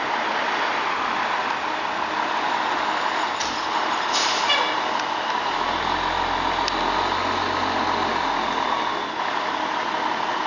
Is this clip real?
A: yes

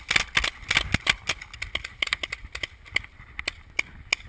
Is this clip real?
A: yes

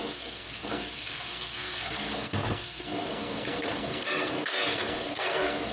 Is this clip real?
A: no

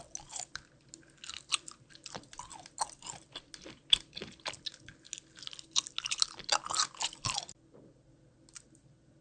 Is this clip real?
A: yes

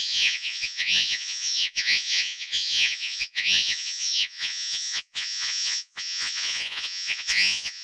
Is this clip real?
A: no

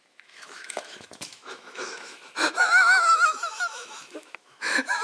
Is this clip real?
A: no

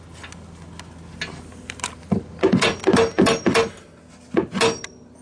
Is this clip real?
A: yes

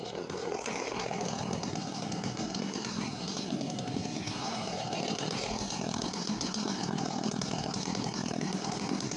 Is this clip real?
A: no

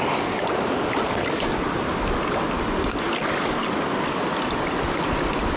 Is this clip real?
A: yes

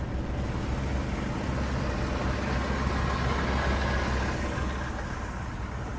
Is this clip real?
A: yes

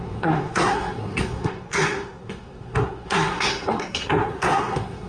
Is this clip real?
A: no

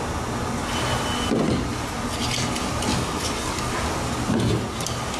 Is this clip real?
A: yes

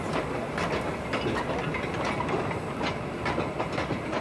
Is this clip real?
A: yes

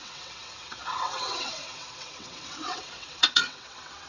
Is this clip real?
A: no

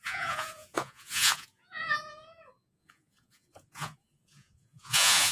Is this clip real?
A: no